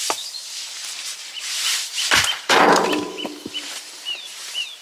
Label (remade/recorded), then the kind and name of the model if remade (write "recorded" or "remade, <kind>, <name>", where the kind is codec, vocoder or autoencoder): remade, vocoder, BigVGAN v2